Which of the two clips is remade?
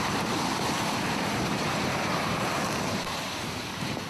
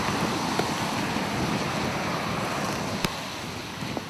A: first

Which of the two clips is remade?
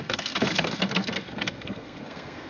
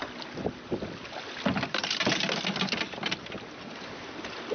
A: first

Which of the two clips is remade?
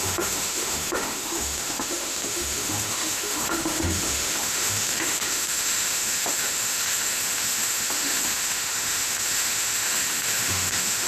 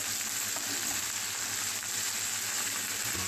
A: first